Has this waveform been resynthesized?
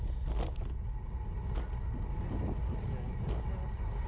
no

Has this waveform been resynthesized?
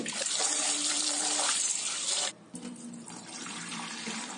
yes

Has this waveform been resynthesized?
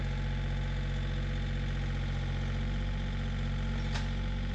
no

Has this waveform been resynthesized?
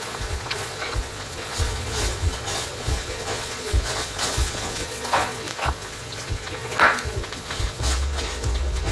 yes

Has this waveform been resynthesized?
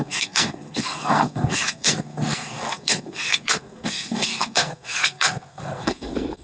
yes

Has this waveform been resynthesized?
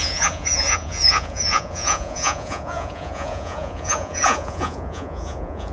yes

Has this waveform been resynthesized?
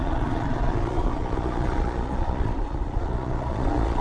yes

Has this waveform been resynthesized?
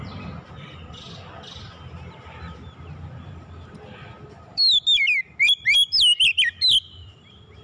no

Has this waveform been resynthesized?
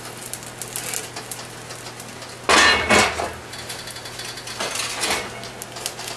no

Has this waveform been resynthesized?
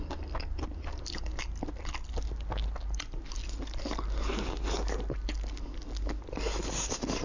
no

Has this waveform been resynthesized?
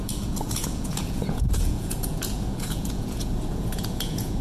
yes